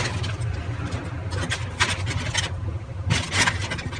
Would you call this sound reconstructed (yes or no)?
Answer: no